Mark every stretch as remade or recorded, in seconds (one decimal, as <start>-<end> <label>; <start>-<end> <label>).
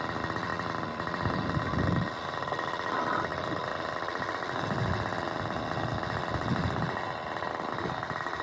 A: 0.0-8.4 recorded